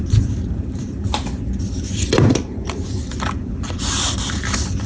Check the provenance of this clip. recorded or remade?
remade